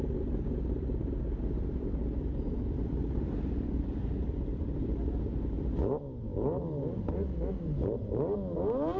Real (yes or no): yes